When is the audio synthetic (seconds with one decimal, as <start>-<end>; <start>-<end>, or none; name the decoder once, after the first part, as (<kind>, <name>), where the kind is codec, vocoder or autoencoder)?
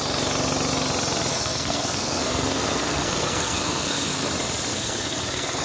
1.3-4.3 (codec, SNAC); 4.7-5.6